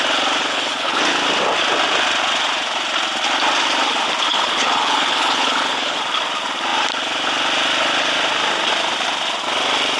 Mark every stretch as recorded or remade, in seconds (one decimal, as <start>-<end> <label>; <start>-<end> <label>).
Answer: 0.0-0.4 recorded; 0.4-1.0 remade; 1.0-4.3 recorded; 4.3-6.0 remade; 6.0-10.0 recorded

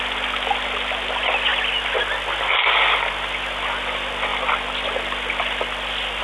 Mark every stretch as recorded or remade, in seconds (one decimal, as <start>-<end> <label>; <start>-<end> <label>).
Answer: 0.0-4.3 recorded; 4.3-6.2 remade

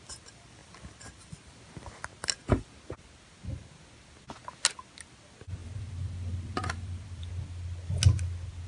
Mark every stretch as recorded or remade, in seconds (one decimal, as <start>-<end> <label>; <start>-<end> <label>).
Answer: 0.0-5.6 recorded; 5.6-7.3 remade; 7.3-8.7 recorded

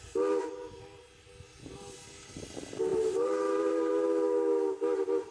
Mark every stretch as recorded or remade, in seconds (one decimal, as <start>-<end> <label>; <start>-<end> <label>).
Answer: 0.0-2.9 recorded; 2.9-3.9 remade; 3.9-5.3 recorded

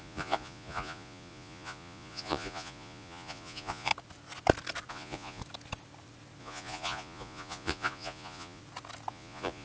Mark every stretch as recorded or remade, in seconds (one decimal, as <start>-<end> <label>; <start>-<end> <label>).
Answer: 0.0-3.9 remade; 3.9-4.9 recorded; 4.9-5.4 remade; 5.4-6.4 recorded; 6.4-8.6 remade; 8.6-9.1 recorded; 9.1-9.6 remade